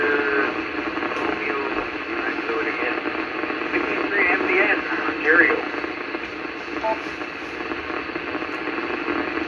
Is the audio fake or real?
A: real